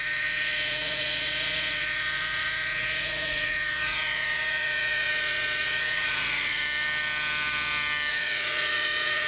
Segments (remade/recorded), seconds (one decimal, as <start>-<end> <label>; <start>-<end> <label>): 0.0-6.6 remade; 6.6-8.1 recorded; 8.1-9.3 remade